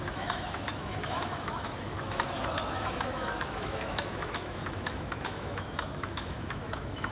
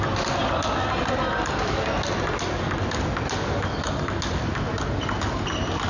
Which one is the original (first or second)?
second